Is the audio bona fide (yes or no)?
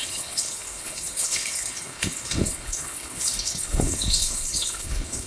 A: no